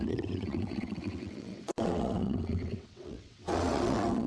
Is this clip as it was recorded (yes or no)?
no